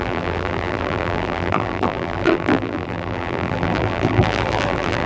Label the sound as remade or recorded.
remade